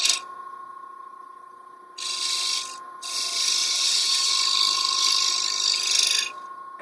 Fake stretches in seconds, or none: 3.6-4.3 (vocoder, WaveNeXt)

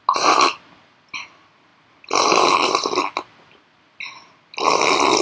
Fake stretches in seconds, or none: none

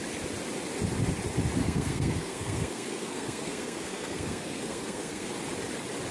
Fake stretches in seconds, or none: 1.6-5.3 (codec, SNAC)